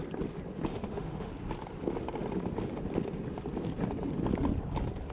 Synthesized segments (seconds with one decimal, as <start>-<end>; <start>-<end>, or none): 0.7-1.3